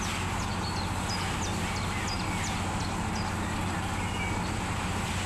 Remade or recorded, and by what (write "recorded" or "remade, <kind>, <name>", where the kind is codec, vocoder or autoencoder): recorded